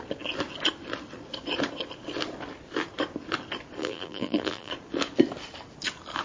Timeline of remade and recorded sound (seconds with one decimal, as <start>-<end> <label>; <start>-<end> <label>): 0.0-3.8 recorded; 3.8-4.7 remade; 4.7-6.2 recorded